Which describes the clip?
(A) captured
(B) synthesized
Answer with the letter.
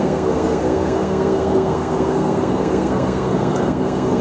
B